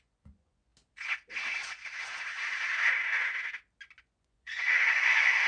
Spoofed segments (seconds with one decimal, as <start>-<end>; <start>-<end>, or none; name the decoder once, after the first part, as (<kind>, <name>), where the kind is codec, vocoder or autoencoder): 0.0-0.7 (vocoder, Vocos); 4.0-5.5